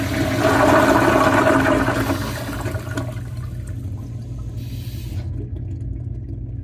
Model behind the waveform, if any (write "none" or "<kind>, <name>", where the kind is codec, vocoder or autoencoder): none